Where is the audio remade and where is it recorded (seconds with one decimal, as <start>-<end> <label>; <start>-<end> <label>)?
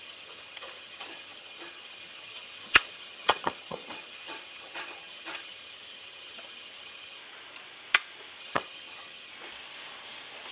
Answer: 0.0-7.2 remade; 7.2-8.4 recorded; 8.4-9.3 remade; 9.3-10.5 recorded